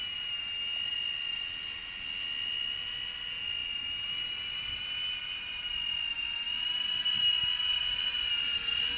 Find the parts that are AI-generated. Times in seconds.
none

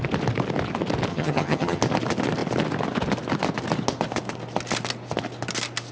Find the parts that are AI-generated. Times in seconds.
1.1-1.8

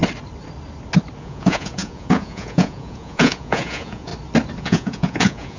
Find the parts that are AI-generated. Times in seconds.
1.2-4.1; 4.6-5.6

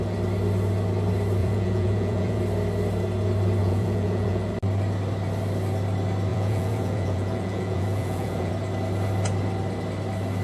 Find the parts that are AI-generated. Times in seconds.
1.4-2.4; 3.6-4.5; 6.3-8.5